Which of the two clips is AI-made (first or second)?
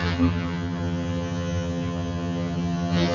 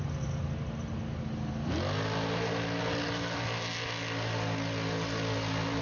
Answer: first